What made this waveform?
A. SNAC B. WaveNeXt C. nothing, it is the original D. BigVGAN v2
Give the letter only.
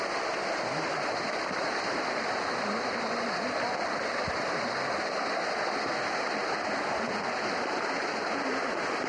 C